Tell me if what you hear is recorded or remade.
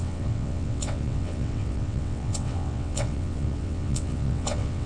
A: remade